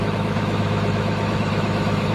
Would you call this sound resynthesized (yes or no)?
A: yes